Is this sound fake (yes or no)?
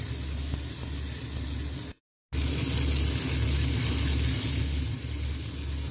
no